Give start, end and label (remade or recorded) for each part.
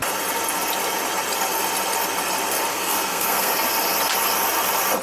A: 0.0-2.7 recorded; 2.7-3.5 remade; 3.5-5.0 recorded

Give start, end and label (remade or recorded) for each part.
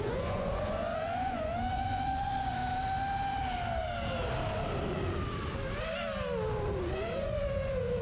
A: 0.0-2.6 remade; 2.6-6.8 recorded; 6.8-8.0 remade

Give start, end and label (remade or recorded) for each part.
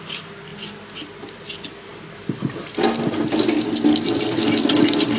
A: 0.0-5.2 recorded